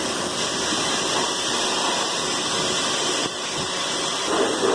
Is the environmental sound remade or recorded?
recorded